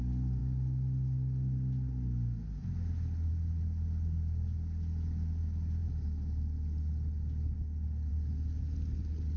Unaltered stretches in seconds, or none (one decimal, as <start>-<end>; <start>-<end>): 0.0-9.4